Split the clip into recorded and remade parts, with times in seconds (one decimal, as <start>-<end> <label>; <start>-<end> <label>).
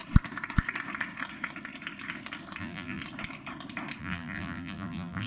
0.0-2.6 recorded; 2.6-3.0 remade; 3.0-4.0 recorded; 4.0-5.3 remade